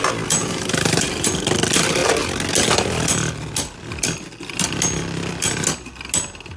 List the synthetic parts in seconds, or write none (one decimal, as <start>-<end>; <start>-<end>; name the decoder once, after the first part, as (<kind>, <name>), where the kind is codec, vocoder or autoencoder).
0.4-1.3 (vocoder, BigVGAN v2)